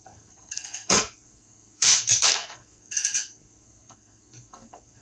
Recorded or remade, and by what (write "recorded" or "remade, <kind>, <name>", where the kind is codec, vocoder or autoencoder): remade, codec, SNAC